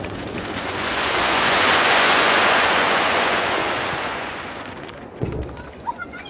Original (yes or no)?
no